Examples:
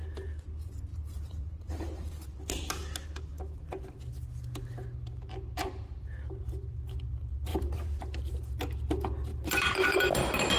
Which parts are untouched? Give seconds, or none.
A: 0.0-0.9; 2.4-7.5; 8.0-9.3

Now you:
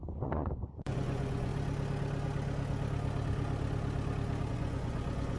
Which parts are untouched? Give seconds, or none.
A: 1.5-4.5

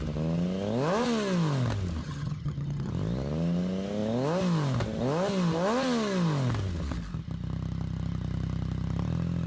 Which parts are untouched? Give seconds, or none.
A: 0.0-2.0; 2.9-9.5

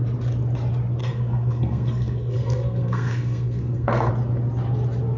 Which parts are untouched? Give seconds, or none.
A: 0.0-1.0; 4.1-5.2

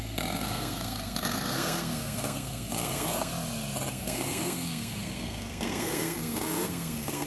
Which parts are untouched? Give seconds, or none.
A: 3.3-3.9

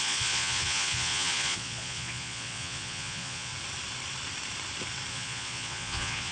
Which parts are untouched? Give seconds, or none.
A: 3.5-5.1